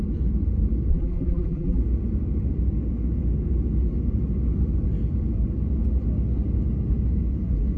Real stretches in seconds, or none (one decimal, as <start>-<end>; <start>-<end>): 0.0-0.9; 1.8-7.8